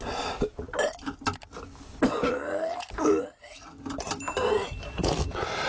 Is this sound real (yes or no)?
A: yes